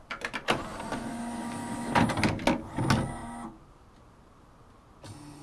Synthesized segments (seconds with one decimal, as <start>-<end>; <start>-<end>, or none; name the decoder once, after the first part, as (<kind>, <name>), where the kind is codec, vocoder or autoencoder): none